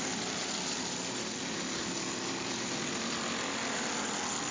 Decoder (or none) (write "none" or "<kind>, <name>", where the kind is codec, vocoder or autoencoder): none